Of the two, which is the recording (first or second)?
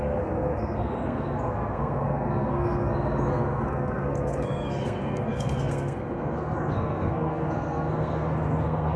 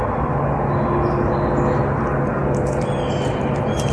second